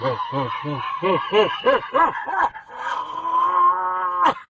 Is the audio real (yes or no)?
yes